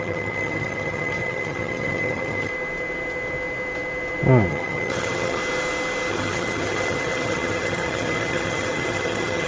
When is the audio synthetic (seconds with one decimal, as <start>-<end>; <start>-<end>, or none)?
0.0-2.5; 4.5-5.4; 6.1-9.5